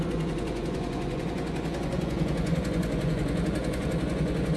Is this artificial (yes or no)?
yes